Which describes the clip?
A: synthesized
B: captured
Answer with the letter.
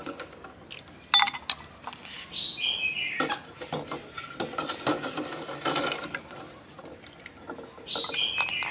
B